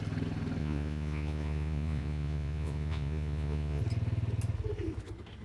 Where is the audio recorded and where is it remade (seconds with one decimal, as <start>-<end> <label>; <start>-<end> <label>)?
0.0-0.6 recorded; 0.6-3.8 remade; 3.8-5.4 recorded